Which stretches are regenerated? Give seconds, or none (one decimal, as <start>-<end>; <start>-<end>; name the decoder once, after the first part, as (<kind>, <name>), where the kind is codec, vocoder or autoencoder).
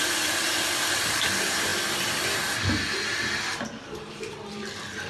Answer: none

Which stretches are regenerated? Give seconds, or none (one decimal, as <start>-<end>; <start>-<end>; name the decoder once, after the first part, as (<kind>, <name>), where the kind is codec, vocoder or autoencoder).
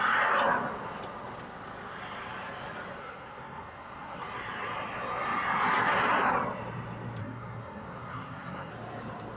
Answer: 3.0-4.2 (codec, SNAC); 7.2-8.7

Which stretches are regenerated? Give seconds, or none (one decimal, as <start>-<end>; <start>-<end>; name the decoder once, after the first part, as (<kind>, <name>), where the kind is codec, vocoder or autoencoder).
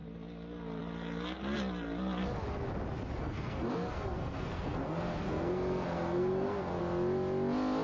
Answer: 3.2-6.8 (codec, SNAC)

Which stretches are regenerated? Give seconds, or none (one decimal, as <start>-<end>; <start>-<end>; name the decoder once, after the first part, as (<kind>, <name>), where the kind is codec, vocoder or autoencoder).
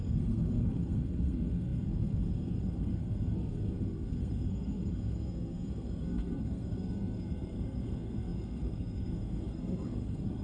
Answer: 0.0-10.4 (codec, SNAC)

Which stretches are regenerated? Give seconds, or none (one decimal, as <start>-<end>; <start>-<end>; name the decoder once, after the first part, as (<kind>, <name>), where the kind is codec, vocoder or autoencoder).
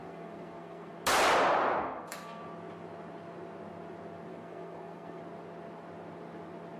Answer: 0.0-0.9 (codec, SNAC); 1.8-2.4; 4.3-5.2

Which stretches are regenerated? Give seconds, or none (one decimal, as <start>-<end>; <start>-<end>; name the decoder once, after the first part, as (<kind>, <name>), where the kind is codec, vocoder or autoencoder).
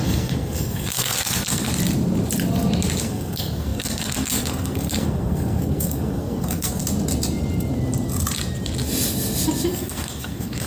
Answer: 0.0-1.7 (codec, SNAC); 3.0-6.8; 9.7-10.7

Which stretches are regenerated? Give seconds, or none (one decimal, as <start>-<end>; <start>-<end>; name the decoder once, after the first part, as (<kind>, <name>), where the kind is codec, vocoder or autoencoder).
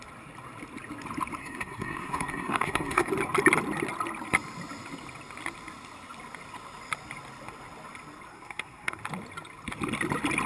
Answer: 1.4-3.1 (codec, SNAC); 8.3-9.0